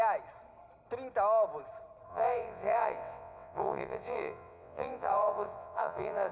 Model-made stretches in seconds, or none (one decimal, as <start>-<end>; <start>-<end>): 2.1-6.3